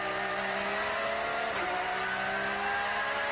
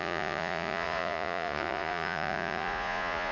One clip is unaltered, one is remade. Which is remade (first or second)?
second